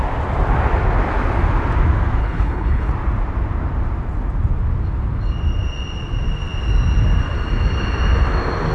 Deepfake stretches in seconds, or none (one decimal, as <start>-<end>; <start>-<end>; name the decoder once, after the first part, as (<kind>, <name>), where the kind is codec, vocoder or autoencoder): 2.2-2.9 (codec, HILCodec)